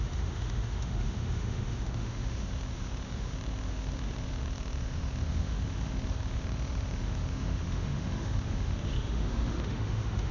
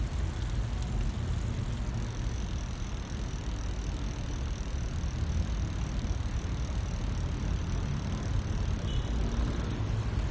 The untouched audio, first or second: second